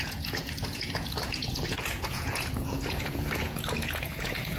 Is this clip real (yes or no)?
no